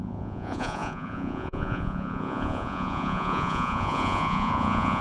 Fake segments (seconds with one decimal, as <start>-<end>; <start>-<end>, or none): 0.0-5.0

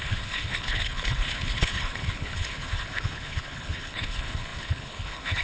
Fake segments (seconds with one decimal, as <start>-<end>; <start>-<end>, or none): 0.0-5.4

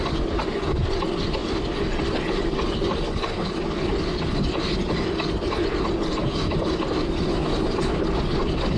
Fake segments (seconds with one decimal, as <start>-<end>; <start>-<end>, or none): 1.4-2.2

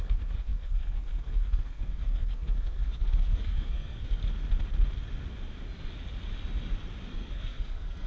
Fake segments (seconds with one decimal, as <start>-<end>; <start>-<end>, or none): 0.0-4.2; 7.1-8.1

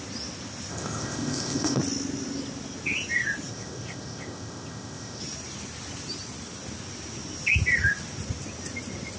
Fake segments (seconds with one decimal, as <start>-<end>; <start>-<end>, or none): 0.7-1.8; 3.5-5.2

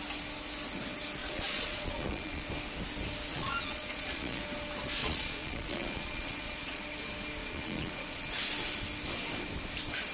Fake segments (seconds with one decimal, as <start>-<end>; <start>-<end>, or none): 1.2-2.5; 3.3-4.4; 5.0-6.8; 7.4-8.4

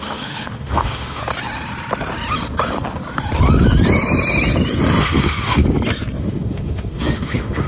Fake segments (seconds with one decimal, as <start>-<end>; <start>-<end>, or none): 0.0-1.2; 5.0-5.6; 6.2-7.7

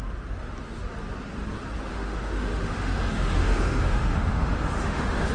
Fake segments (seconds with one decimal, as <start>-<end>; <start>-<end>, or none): 1.9-5.3